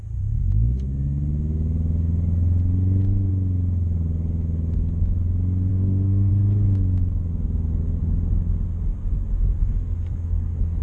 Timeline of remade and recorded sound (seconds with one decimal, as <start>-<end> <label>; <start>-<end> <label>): 0.0-5.7 recorded; 5.7-6.3 remade; 6.3-9.6 recorded; 9.6-10.8 remade